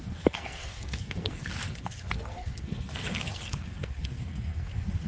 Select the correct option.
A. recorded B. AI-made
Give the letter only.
B